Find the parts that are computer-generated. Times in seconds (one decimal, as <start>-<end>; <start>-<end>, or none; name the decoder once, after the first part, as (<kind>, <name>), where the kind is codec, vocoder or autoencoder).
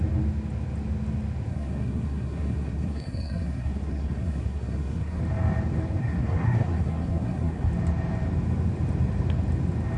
1.5-5.2 (codec, SNAC); 6.0-7.7